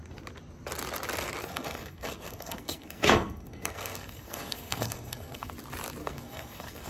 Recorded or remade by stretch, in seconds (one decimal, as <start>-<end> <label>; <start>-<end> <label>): 0.0-1.4 recorded; 1.4-5.5 remade; 5.5-6.0 recorded; 6.0-6.9 remade